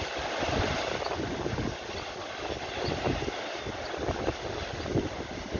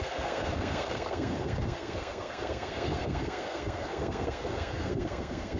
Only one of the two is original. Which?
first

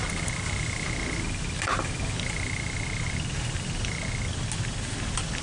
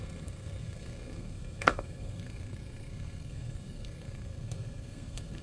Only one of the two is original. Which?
first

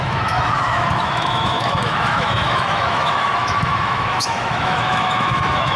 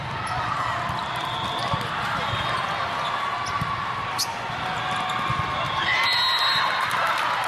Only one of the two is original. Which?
second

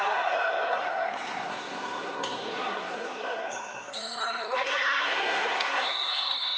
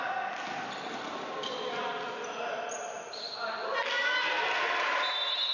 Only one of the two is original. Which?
second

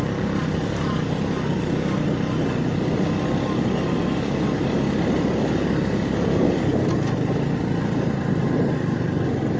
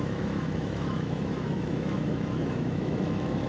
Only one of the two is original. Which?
first